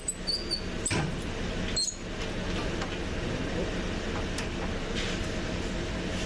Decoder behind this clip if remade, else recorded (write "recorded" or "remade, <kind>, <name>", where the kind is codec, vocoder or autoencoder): recorded